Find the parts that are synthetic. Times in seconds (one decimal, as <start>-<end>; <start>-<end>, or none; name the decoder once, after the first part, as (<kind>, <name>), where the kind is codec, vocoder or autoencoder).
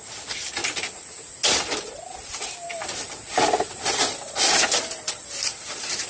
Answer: 0.0-0.6 (vocoder, BigVGAN v2); 3.9-6.1